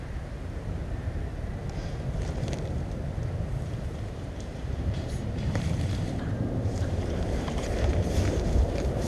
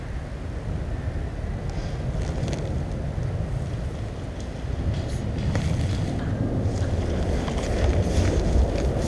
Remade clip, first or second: first